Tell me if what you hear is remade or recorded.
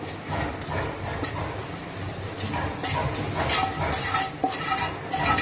recorded